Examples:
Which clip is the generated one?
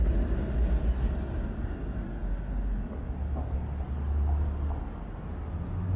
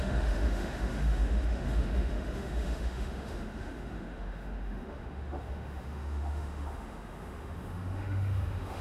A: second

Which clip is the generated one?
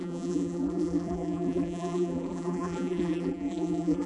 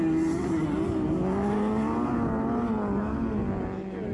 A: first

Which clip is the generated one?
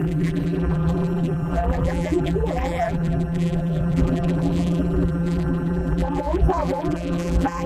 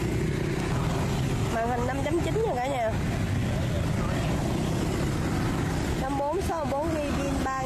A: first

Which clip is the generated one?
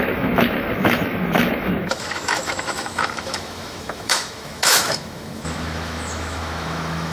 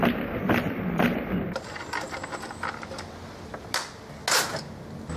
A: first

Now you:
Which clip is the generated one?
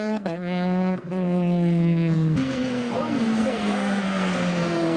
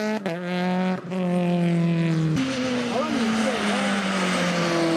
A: first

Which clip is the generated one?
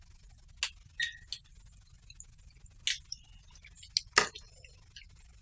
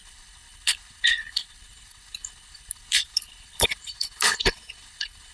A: second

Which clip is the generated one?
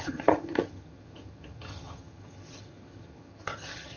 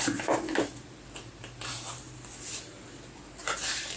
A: first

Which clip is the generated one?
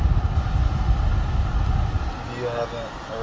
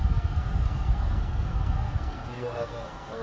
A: second